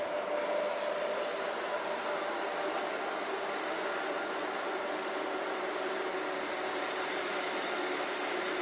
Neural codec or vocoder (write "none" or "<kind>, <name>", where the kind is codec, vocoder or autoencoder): none